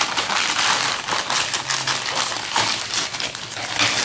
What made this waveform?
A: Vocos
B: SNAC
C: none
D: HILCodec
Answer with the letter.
C